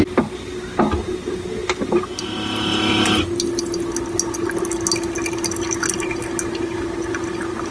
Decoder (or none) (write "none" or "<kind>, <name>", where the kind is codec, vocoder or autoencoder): none